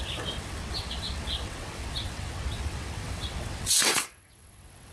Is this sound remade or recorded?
remade